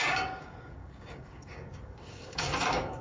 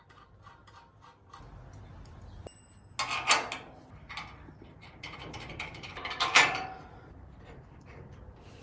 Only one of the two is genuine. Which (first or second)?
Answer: second